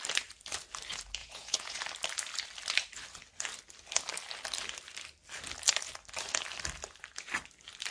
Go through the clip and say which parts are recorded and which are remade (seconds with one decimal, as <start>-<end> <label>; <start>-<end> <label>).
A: 0.0-1.2 recorded; 1.2-1.8 remade; 1.8-7.9 recorded